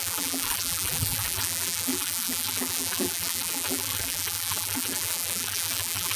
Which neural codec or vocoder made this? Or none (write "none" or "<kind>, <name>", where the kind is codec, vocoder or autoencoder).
vocoder, BigVGAN v2